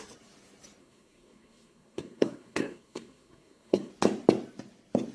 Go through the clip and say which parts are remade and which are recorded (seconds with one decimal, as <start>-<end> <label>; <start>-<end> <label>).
0.0-0.8 recorded; 0.8-3.9 remade; 3.9-5.1 recorded